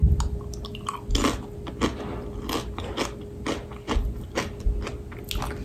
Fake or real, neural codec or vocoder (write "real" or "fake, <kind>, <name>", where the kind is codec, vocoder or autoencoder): real